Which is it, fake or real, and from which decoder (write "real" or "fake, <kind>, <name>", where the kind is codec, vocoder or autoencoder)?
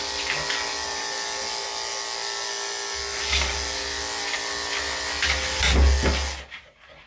real